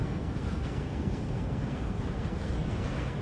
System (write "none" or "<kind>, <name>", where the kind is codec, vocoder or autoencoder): codec, SNAC